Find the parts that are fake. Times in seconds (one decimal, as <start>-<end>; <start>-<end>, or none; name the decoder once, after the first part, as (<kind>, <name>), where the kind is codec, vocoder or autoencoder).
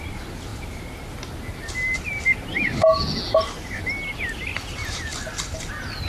none